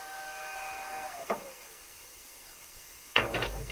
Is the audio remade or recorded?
remade